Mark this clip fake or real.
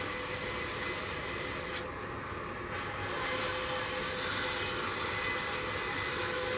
real